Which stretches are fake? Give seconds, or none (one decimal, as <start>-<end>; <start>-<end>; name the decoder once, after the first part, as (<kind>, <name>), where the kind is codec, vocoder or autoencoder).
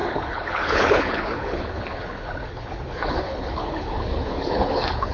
0.0-5.1 (codec, HILCodec)